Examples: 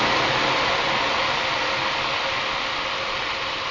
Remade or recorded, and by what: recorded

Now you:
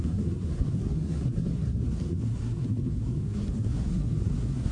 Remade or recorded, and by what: remade, codec, SNAC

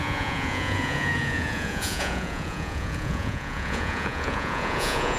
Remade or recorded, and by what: remade, vocoder, Vocos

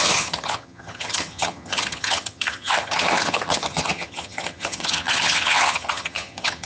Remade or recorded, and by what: remade, vocoder, HiFi-GAN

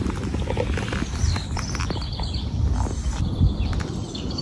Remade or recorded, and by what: remade, vocoder, BigVGAN v2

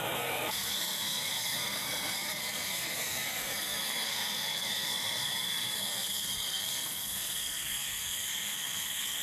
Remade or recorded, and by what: remade, codec, SNAC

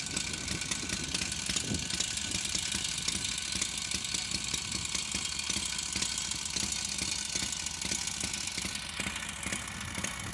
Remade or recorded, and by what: recorded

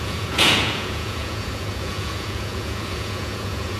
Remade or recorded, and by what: remade, vocoder, Vocos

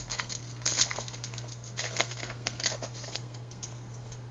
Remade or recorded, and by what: remade, codec, SNAC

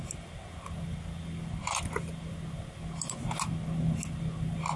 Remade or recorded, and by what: recorded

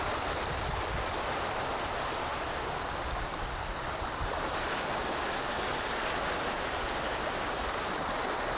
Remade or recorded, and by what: recorded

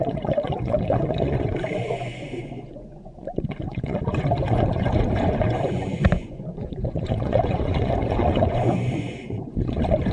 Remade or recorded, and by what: remade, vocoder, Vocos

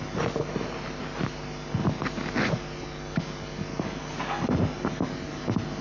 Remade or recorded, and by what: recorded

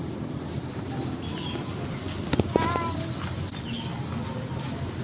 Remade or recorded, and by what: recorded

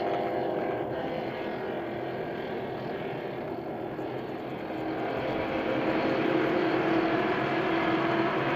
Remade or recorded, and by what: recorded